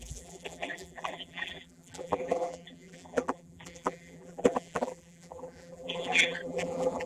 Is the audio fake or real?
fake